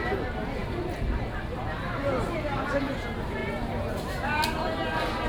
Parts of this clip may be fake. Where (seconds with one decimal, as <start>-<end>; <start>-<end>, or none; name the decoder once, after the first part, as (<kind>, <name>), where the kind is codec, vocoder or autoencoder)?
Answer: none